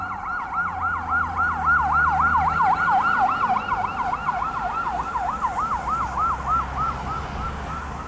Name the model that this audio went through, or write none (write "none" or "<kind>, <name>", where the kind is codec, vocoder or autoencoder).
none